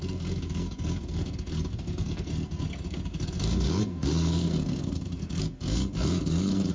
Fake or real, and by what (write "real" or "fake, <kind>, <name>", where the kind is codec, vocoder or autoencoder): fake, codec, SNAC